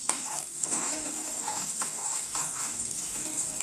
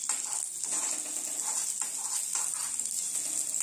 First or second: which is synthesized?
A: first